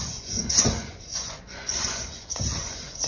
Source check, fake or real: fake